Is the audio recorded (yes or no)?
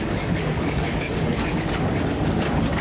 no